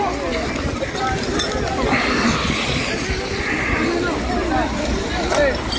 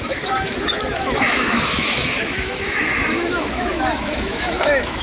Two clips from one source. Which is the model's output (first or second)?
second